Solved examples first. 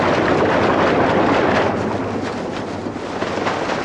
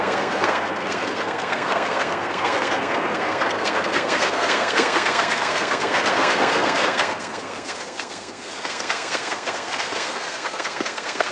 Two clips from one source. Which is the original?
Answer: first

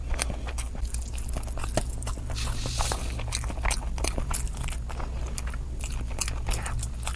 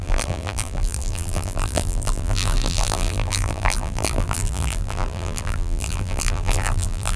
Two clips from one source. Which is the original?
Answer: first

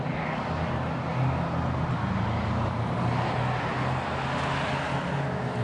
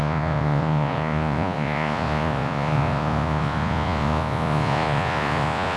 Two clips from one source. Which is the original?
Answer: first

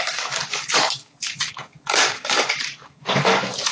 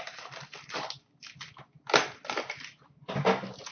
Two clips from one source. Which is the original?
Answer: second